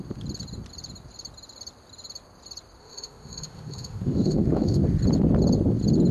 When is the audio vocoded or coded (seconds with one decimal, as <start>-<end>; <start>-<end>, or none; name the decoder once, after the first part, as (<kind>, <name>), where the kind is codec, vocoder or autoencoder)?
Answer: 2.8-4.8 (autoencoder, DAC-VAE)